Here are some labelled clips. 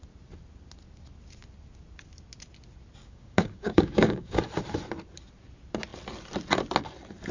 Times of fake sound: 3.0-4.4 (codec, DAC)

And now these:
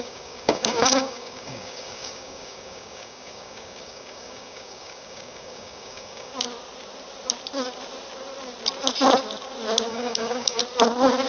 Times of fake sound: 0.0-6.3 (codec, DAC); 9.9-10.6

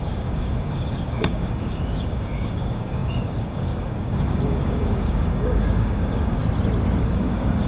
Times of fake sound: 0.0-6.4 (codec, DAC); 7.0-7.7

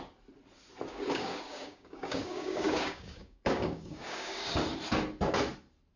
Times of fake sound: 0.9-4.5 (codec, DAC)

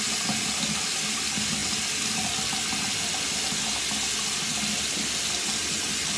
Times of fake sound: none

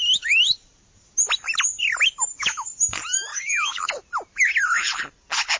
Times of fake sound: 2.3-2.8 (codec, DAC); 3.3-4.0

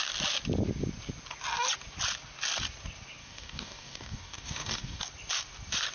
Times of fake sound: 3.2-5.0 (codec, DAC)

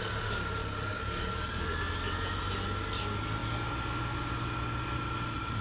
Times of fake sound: 0.6-1.8 (codec, DAC)